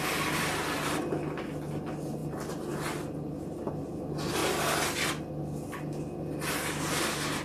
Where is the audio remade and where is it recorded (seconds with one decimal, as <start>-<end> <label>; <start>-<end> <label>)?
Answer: 0.0-7.4 recorded